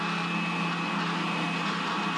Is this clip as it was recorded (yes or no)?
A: yes